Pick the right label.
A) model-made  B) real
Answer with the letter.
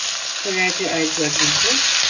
B